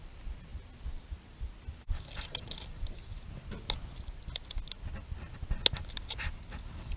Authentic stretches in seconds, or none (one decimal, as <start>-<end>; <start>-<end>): 0.0-7.0